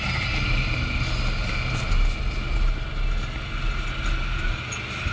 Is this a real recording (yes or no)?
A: yes